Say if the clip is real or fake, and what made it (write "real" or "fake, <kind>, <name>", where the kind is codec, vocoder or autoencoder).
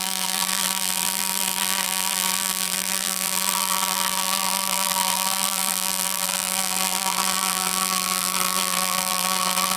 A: fake, vocoder, BigVGAN v2